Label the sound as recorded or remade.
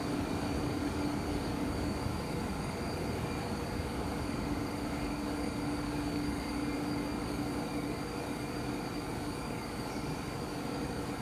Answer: remade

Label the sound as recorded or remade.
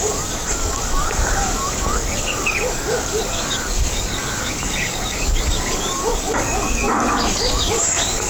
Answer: remade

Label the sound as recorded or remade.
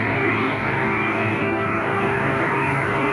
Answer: remade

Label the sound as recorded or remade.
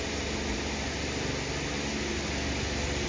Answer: recorded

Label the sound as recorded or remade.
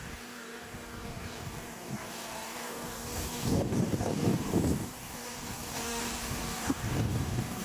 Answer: remade